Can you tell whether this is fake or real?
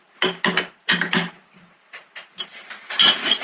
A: real